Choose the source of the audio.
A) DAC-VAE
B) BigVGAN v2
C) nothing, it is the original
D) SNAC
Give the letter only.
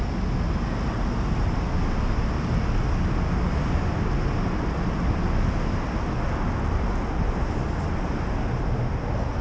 C